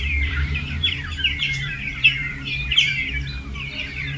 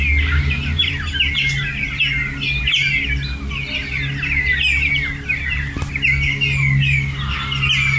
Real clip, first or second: second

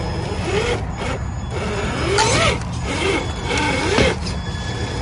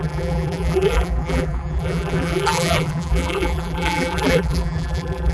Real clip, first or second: first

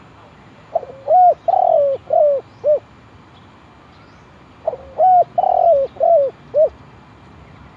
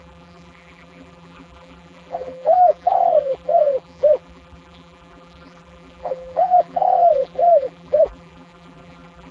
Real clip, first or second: first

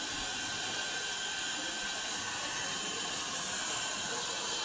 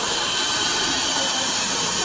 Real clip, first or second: first